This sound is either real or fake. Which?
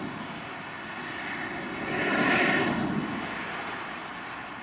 real